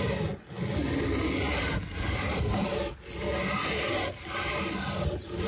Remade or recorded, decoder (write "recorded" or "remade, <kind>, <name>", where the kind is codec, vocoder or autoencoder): recorded